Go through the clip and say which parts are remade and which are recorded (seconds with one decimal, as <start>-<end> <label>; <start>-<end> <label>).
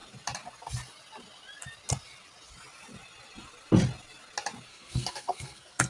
0.0-4.7 recorded; 4.7-5.9 remade